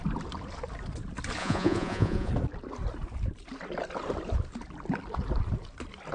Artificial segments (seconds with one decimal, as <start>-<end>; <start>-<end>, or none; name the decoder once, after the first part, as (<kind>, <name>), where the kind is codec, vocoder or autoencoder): 1.4-2.3 (vocoder, Vocos)